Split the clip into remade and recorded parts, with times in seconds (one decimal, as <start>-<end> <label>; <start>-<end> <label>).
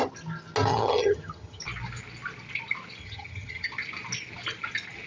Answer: 0.0-0.7 recorded; 0.7-1.6 remade; 1.6-3.0 recorded; 3.0-3.7 remade; 3.7-5.1 recorded